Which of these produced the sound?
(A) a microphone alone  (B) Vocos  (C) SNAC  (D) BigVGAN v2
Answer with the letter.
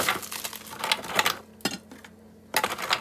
A